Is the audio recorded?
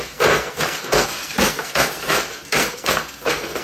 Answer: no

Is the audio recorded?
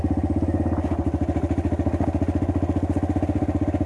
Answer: yes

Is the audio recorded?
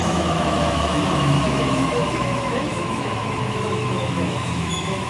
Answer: no